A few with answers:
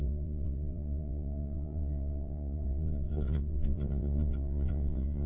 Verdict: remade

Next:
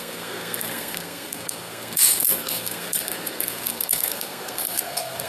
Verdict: remade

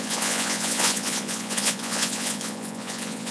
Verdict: remade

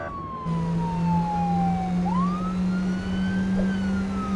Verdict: recorded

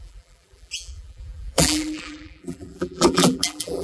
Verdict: remade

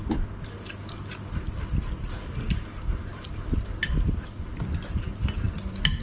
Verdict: recorded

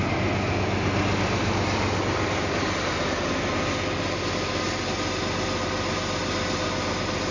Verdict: recorded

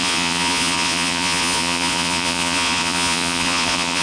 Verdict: remade